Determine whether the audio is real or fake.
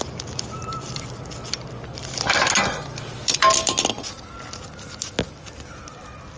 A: real